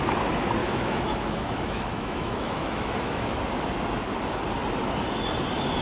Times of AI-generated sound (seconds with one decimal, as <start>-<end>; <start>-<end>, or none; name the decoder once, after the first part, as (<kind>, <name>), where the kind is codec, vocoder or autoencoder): 0.6-3.4 (autoencoder, DAC-VAE)